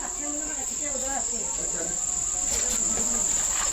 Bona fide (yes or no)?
yes